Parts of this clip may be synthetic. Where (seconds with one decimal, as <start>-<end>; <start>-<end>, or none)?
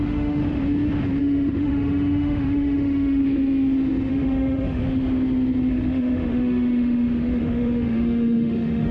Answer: 0.0-0.4; 1.2-3.2; 4.1-4.8; 5.7-8.9